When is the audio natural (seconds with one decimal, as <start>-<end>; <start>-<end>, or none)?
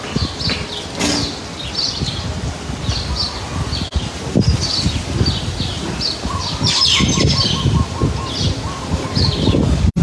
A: 0.0-10.0